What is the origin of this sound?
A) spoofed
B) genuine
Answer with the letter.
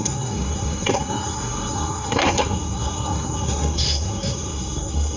A